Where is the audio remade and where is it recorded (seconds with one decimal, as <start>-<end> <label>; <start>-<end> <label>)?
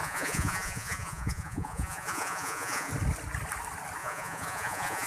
0.0-2.9 remade; 2.9-4.0 recorded; 4.0-5.1 remade